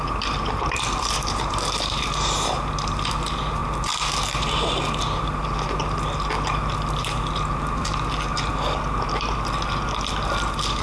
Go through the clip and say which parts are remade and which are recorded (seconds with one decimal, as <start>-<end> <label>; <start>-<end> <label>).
0.0-3.6 remade; 3.6-5.2 recorded; 5.2-8.5 remade; 8.5-9.1 recorded; 9.1-10.8 remade